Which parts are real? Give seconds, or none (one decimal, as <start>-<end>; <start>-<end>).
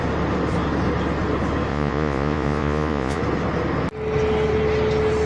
0.0-1.7; 3.2-5.3